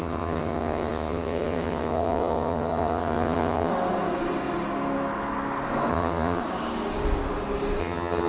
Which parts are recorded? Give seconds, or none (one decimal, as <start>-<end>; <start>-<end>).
3.7-5.9; 6.4-7.8